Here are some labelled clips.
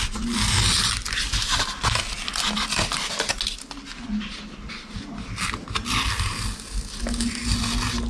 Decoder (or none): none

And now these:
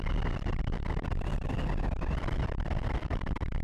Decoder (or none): none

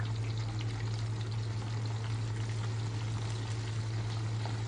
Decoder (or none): none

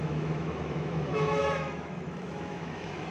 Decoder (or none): autoencoder, DAC-VAE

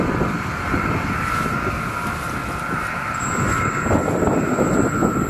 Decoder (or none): none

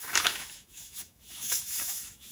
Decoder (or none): autoencoder, DAC-VAE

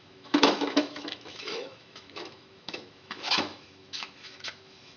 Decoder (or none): autoencoder, DAC-VAE